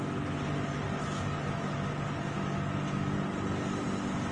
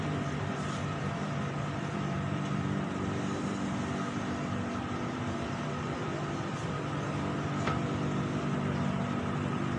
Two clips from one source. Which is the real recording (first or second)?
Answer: first